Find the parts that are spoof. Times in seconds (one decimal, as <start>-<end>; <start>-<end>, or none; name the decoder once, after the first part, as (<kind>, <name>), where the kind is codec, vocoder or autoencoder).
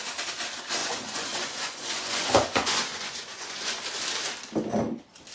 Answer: 0.8-3.8 (vocoder, Vocos)